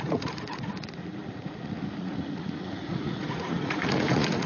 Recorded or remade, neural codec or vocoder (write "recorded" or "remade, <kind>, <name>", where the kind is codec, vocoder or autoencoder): remade, vocoder, Vocos